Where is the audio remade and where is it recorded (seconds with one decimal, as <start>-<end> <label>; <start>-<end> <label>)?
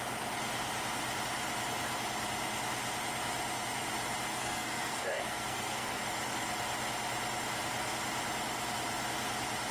0.0-4.3 recorded; 4.3-6.0 remade; 6.0-9.7 recorded